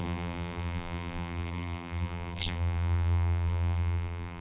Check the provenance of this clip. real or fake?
fake